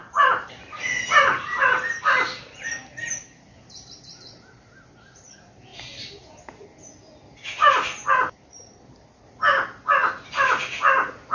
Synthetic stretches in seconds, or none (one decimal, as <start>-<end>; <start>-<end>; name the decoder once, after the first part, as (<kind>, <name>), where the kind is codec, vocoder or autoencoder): 0.0-1.7 (vocoder, BigVGAN v2); 5.7-6.4